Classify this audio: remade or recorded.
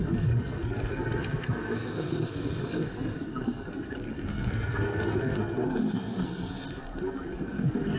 remade